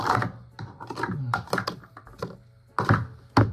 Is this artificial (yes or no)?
no